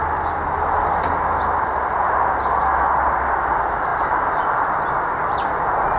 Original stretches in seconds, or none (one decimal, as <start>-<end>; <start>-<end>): 0.0-6.0